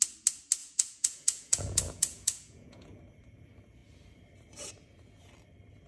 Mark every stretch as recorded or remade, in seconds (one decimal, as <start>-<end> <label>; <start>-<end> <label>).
0.0-0.6 recorded; 0.6-3.0 remade; 3.0-5.9 recorded